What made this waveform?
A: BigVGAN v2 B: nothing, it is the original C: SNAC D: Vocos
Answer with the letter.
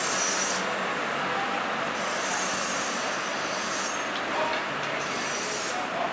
B